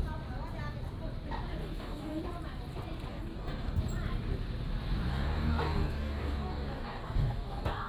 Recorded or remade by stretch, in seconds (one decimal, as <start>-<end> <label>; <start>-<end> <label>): 0.0-1.6 recorded; 1.6-2.2 remade; 2.2-3.1 recorded; 3.1-3.8 remade; 3.8-5.1 recorded; 5.1-7.9 remade